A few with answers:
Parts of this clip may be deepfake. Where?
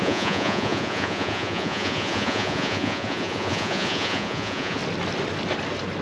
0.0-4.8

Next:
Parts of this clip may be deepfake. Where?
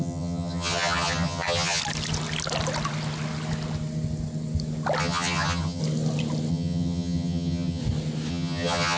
0.0-1.8; 5.0-5.8; 6.5-7.8; 8.3-9.0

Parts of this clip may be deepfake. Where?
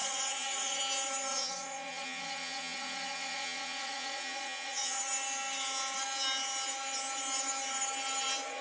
0.0-0.8; 1.3-5.0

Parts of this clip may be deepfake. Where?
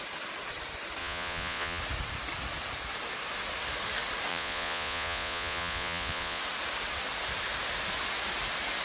1.0-1.8; 4.3-6.4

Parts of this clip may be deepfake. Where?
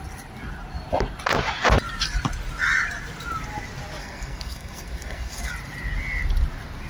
4.0-5.5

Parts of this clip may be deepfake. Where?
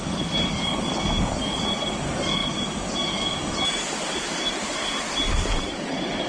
none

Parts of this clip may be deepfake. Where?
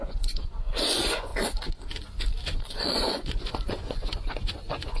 0.0-1.3; 2.6-5.0